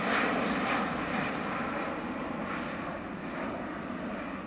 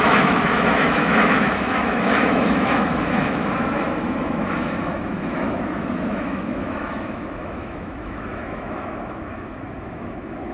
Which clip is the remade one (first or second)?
second